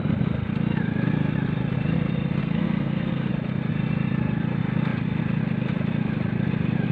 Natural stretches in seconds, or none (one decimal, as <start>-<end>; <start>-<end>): 0.0-2.4; 3.3-6.9